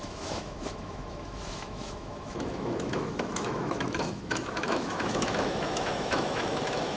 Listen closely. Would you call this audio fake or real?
fake